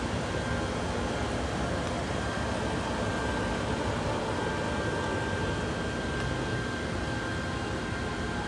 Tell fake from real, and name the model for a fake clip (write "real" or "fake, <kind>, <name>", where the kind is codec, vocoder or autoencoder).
real